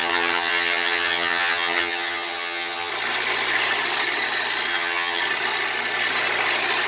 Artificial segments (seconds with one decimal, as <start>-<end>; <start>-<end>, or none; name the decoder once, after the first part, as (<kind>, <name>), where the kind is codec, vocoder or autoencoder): 0.0-2.9 (vocoder, HiFi-GAN); 4.7-5.2